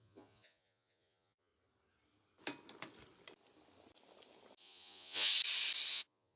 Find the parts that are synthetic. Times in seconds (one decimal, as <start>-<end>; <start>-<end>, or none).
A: 0.0-1.5; 4.6-5.3; 5.9-6.4

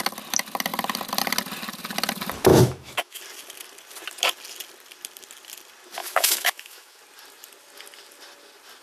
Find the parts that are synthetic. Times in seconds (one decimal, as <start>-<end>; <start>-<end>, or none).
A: 2.5-3.2; 6.0-7.0

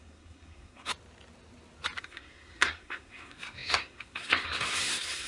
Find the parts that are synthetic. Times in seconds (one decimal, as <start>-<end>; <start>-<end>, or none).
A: 0.0-0.9; 2.0-5.3

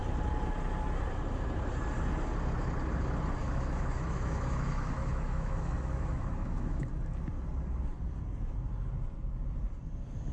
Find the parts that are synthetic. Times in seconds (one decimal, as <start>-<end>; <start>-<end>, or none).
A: 3.4-6.8

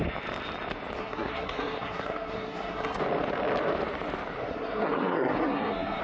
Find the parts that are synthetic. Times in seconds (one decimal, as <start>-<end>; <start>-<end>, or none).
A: 1.0-3.0; 4.5-6.0